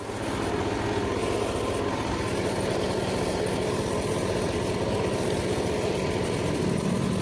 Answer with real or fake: real